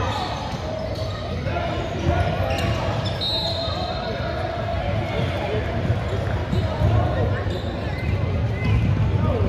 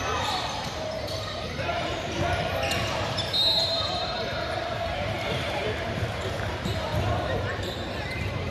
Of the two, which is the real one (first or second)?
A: first